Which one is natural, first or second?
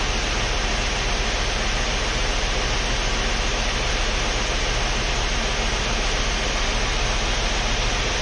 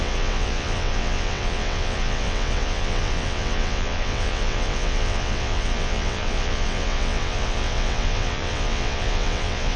first